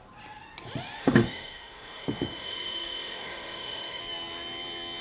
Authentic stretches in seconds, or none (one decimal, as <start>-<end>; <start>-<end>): 0.0-1.0; 4.0-5.0